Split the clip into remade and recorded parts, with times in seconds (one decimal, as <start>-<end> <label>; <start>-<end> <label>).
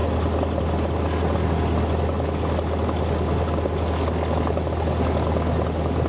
0.0-6.1 recorded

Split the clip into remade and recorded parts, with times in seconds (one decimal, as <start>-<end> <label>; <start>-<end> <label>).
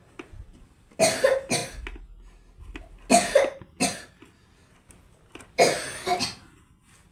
0.0-7.1 recorded